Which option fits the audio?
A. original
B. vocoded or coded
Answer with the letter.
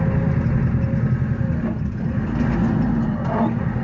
A